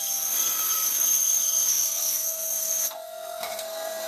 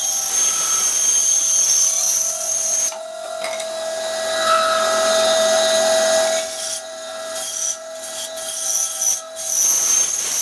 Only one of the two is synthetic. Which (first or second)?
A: first